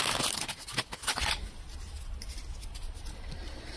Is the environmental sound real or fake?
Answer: real